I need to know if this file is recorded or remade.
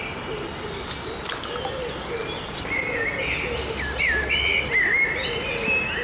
recorded